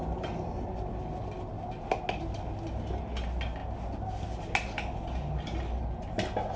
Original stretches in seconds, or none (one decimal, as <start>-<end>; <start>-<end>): 0.0-6.6